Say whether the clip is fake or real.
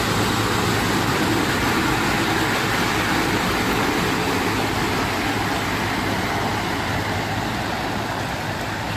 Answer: real